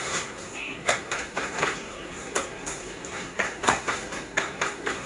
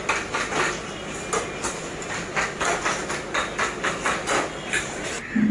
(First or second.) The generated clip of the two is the first